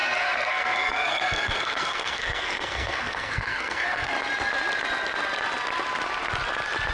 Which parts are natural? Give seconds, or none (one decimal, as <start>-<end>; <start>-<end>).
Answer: 4.1-6.9